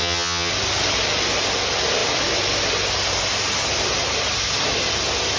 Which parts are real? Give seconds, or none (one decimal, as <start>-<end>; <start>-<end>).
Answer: 0.5-5.4